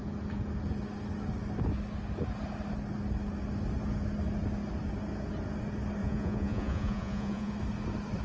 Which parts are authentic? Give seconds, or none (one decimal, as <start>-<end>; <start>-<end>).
0.0-6.0; 7.5-8.2